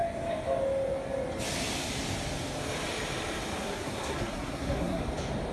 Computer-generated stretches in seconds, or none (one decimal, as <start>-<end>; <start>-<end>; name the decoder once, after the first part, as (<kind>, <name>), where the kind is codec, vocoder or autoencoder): 3.6-5.0 (codec, SNAC)